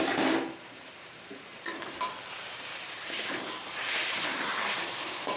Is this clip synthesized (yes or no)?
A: yes